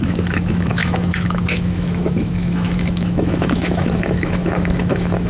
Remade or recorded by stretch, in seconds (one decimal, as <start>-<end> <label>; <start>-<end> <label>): 0.0-5.3 remade